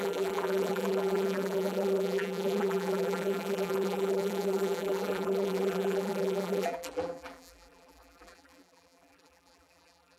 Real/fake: fake